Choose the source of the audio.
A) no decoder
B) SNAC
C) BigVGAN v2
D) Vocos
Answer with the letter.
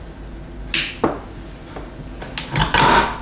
A